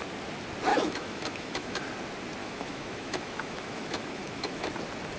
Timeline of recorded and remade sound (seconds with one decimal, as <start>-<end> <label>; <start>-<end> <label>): 0.0-0.7 recorded; 0.7-1.8 remade; 1.8-2.4 recorded; 2.4-4.7 remade; 4.7-5.2 recorded